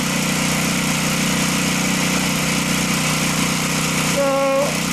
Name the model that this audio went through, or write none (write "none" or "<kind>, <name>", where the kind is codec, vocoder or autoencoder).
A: none